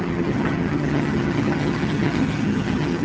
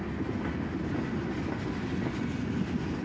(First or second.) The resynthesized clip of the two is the first